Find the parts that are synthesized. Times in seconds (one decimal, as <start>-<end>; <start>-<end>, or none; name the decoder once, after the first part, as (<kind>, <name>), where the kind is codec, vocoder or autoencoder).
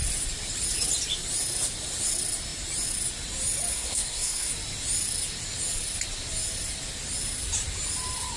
3.7-4.5 (codec, SNAC)